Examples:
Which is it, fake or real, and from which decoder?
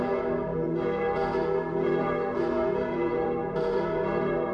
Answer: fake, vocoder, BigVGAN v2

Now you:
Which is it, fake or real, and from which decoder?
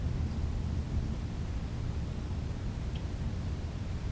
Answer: real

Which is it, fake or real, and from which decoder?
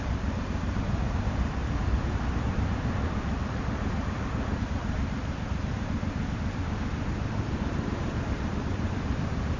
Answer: fake, vocoder, BigVGAN v2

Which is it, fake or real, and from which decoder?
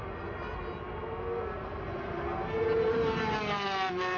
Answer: real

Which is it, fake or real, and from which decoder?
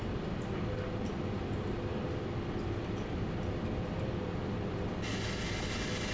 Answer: real